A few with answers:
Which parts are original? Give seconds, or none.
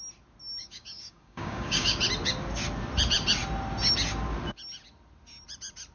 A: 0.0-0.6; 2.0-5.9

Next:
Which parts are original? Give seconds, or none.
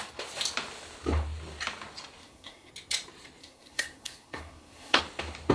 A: 0.0-2.2; 2.7-3.4; 5.0-5.5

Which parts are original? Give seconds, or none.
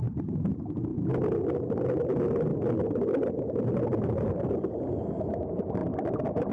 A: 0.0-2.5; 5.1-6.5